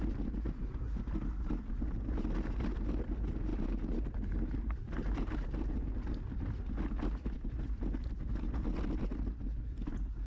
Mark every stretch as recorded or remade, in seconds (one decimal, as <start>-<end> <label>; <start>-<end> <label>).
0.0-3.5 recorded; 3.5-5.7 remade; 5.7-10.3 recorded